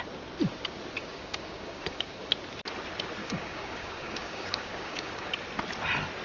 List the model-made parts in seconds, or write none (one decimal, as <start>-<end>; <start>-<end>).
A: 1.0-2.2; 3.2-5.3